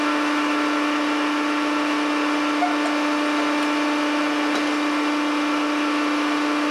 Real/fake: real